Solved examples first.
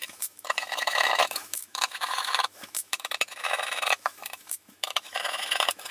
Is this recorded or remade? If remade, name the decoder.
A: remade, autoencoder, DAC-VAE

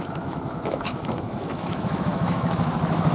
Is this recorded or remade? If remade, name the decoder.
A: remade, autoencoder, DAC-VAE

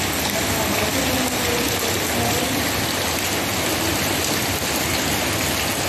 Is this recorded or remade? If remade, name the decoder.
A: recorded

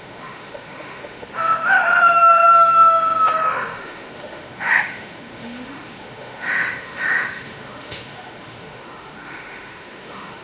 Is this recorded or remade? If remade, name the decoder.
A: remade, autoencoder, DAC-VAE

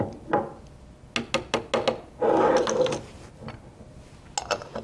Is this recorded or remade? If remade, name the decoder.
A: recorded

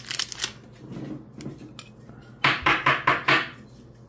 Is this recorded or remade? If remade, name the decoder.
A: recorded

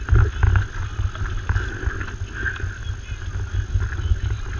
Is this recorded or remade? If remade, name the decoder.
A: recorded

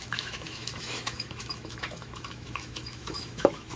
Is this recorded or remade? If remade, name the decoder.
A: remade, autoencoder, DAC-VAE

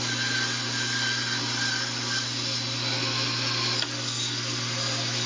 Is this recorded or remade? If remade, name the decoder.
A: recorded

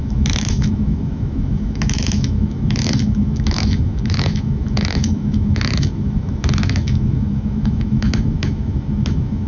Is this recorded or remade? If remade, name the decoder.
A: remade, autoencoder, DAC-VAE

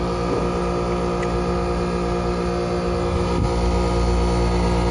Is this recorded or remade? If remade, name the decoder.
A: recorded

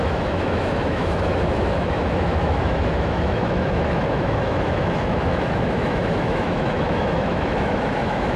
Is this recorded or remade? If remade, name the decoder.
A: remade, autoencoder, DAC-VAE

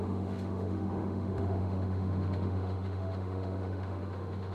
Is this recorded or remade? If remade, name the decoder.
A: remade, autoencoder, DAC-VAE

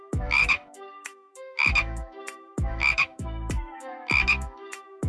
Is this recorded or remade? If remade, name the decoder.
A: remade, autoencoder, DAC-VAE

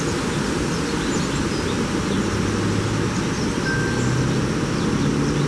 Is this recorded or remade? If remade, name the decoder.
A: recorded